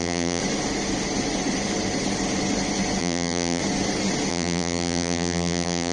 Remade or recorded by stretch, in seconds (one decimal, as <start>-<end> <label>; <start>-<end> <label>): 0.0-0.4 remade; 0.4-3.0 recorded; 3.0-3.6 remade; 3.6-4.3 recorded; 4.3-5.9 remade